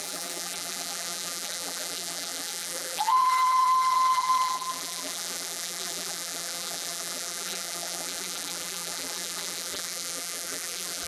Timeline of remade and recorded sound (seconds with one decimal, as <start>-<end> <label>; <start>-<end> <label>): 0.0-11.1 remade